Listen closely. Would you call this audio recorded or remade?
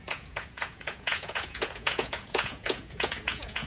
remade